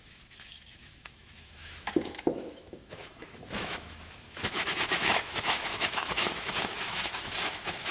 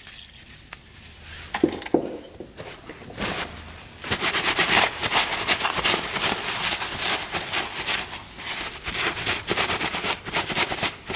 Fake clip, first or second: first